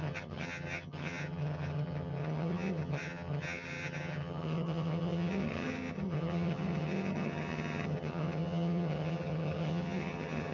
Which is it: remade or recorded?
remade